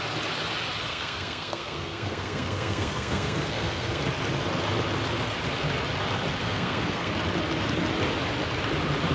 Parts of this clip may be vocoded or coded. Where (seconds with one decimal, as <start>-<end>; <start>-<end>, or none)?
0.9-4.0; 6.4-7.1